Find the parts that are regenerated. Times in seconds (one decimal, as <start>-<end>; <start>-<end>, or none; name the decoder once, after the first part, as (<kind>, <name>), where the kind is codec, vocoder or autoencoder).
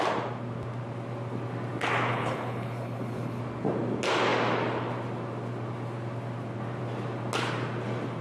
2.1-3.4 (codec, HILCodec)